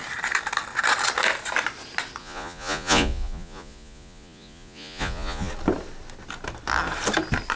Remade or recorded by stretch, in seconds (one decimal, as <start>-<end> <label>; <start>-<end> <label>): 0.0-2.2 recorded; 2.2-5.5 remade; 5.5-7.6 recorded